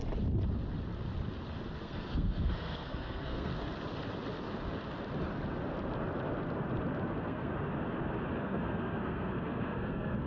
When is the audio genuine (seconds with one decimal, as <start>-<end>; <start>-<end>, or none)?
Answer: 0.0-1.8; 3.5-7.0; 7.5-8.4